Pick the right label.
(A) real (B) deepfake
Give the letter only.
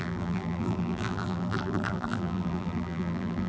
B